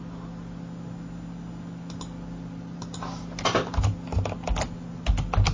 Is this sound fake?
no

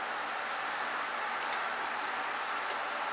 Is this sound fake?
no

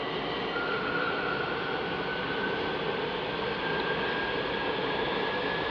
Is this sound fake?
no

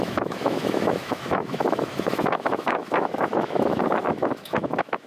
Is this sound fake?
yes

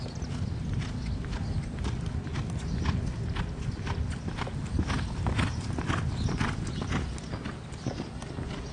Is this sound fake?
no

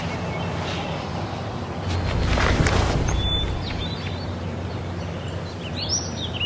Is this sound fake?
no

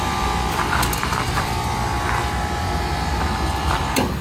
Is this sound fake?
no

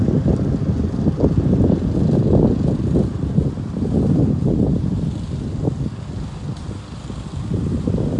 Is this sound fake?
no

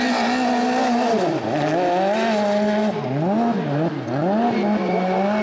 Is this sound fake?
no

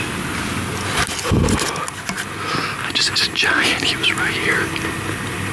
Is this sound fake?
no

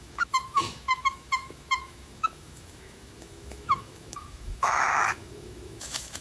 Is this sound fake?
yes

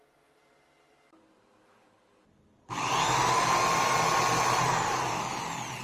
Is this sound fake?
no